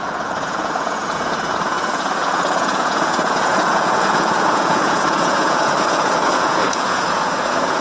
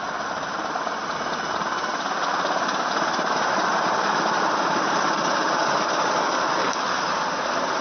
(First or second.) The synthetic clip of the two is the first